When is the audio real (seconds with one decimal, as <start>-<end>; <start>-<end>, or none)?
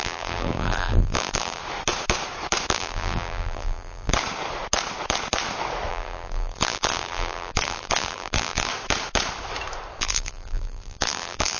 1.6-2.7; 4.1-5.9; 8.7-10.0